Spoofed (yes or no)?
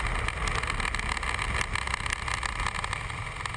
no